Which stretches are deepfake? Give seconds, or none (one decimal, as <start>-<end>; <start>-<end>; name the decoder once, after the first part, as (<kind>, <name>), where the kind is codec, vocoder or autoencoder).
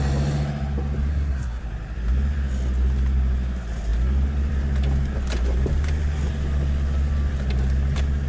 1.1-1.6 (codec, SNAC)